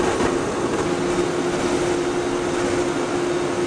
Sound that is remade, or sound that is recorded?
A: recorded